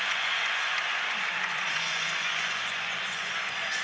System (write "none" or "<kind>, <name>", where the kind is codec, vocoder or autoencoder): vocoder, Vocos